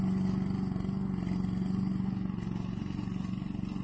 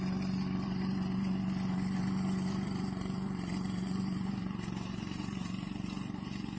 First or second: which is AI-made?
second